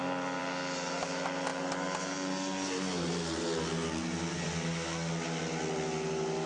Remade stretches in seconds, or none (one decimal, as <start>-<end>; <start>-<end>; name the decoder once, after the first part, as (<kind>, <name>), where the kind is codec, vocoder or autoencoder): none